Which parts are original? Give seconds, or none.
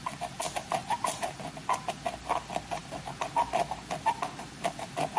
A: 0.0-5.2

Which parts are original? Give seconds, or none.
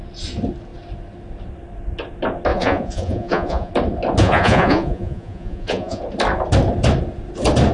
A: 0.0-2.5; 3.7-4.2; 6.0-7.7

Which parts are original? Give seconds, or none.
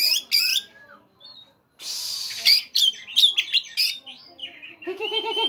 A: 0.0-0.5; 3.8-4.4